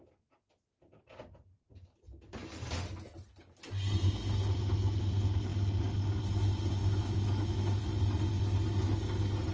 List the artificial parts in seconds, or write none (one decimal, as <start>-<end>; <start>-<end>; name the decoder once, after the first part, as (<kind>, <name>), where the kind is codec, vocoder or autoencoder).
6.8-7.8 (autoencoder, DAC-VAE)